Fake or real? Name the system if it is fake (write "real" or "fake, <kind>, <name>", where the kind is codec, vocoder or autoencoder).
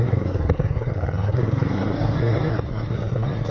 fake, codec, SNAC